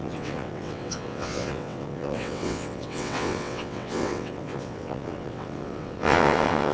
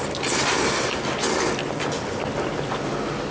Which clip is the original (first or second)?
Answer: second